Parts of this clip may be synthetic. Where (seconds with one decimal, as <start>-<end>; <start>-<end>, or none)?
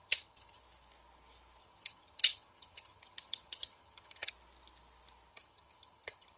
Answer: 0.0-0.6; 1.6-4.3; 5.3-6.4